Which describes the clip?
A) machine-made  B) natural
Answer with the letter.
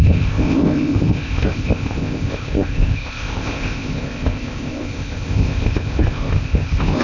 A